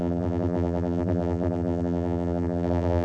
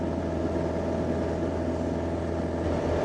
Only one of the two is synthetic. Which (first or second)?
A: first